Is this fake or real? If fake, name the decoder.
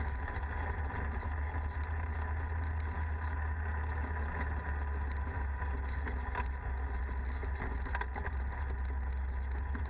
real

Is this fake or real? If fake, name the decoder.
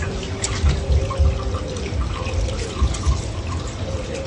real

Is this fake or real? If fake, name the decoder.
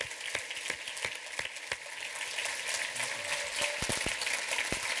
real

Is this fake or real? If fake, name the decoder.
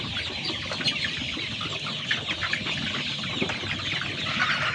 real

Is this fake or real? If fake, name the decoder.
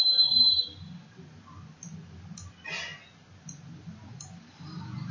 real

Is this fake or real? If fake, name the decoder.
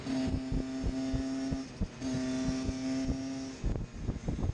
real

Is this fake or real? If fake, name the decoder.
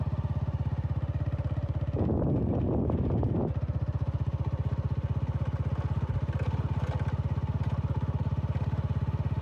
real